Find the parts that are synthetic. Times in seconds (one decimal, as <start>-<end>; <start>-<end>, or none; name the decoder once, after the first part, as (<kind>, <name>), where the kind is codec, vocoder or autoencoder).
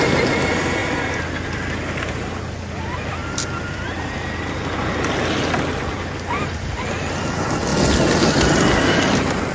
none